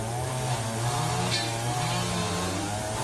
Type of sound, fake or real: real